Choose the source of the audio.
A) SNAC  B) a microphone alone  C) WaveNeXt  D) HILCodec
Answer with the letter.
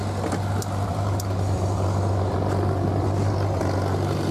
B